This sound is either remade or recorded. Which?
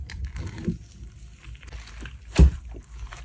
recorded